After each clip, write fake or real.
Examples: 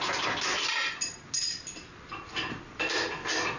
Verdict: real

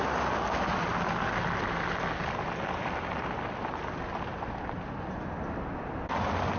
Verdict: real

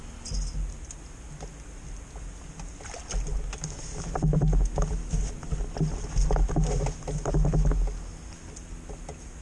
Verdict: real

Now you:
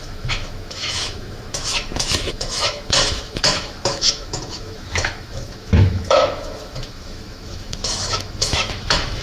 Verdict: fake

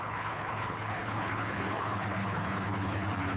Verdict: fake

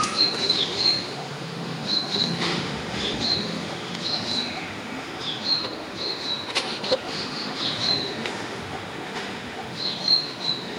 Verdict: fake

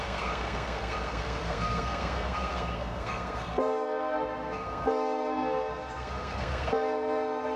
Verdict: fake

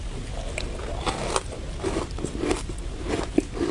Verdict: real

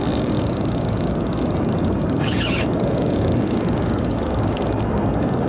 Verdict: fake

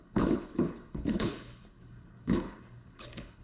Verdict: fake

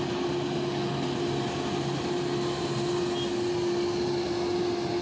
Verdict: real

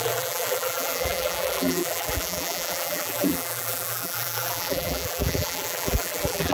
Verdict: fake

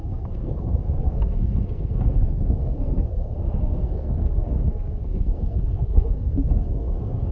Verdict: fake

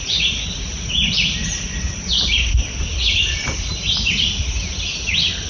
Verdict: real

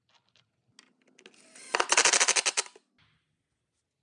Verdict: real